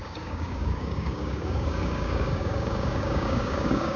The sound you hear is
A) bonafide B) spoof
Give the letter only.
B